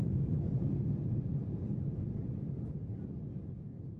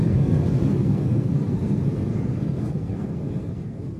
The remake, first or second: second